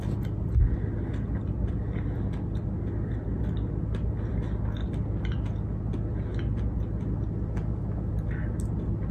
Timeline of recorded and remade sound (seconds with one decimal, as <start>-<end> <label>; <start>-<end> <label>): 0.0-9.1 recorded